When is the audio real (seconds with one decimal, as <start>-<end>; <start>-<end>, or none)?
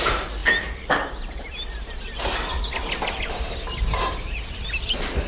0.0-5.3